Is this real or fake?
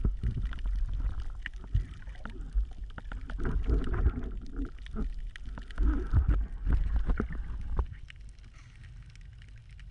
real